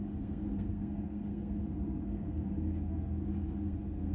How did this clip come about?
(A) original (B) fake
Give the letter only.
B